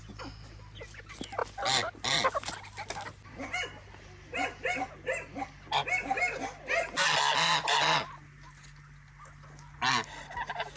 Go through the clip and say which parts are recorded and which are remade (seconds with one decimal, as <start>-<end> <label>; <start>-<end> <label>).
0.0-10.8 recorded